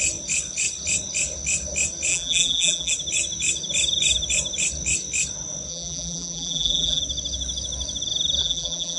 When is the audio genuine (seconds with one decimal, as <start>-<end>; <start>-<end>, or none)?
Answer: 0.0-2.1; 2.9-5.7; 7.0-8.4